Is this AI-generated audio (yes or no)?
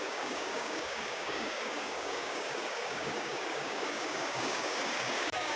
yes